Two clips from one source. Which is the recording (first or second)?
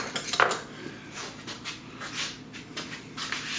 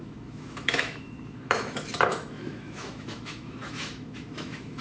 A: first